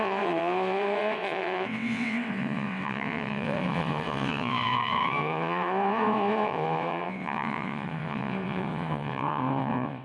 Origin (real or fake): fake